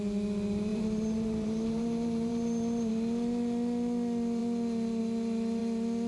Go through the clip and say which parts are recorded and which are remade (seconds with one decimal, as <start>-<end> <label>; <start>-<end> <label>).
0.0-0.7 recorded; 0.7-2.9 remade; 2.9-6.1 recorded